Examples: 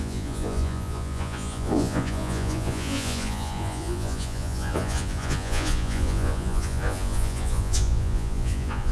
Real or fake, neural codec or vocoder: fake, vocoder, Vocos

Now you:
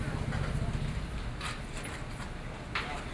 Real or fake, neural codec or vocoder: real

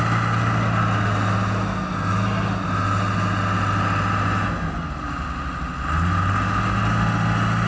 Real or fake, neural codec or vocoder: real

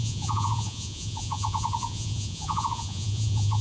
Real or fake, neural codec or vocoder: fake, vocoder, Vocos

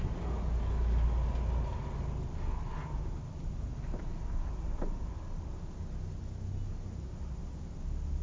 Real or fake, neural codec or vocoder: real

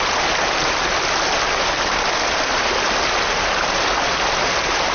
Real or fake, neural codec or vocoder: real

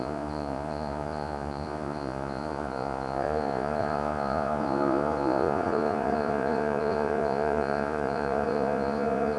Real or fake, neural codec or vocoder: fake, vocoder, Vocos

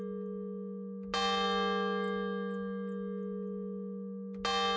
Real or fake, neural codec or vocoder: real